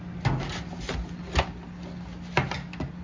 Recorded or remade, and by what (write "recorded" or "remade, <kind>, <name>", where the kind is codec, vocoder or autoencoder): recorded